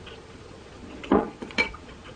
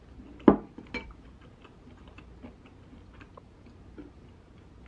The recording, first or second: second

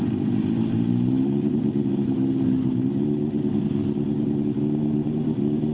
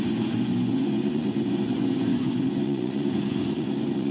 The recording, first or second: first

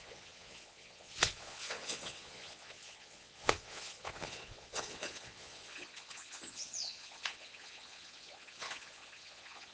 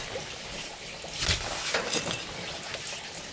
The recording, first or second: second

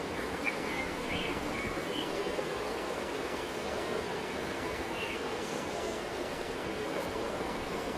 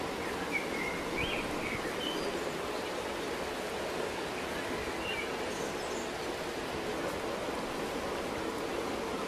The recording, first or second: second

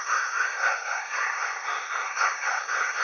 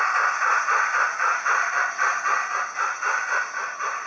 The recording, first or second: second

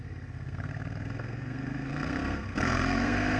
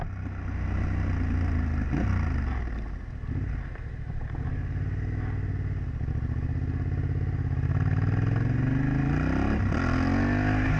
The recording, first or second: second